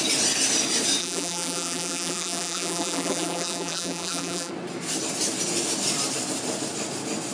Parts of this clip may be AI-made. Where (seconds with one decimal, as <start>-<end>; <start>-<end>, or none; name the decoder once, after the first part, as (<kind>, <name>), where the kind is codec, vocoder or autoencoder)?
1.0-4.5 (vocoder, BigVGAN v2)